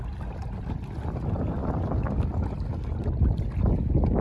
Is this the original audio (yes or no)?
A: yes